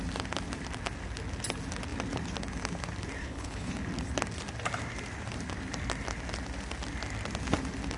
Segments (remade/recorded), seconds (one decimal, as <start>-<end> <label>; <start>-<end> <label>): 0.0-3.2 recorded; 3.2-3.7 remade; 3.7-8.0 recorded